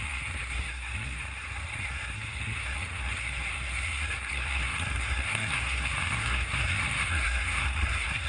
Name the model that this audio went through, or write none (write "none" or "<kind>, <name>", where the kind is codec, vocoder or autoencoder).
codec, SNAC